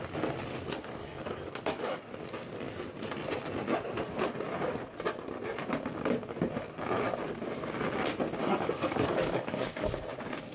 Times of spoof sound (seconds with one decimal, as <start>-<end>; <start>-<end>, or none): 1.0-2.0; 8.4-9.9